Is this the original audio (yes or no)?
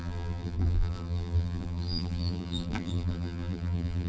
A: no